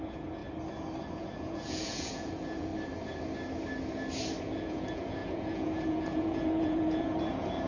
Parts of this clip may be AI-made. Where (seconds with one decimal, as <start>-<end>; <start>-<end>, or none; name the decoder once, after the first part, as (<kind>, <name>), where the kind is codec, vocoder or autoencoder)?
0.0-0.4 (vocoder, Vocos); 1.1-2.7; 4.4-7.7